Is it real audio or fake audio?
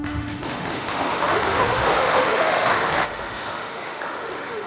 fake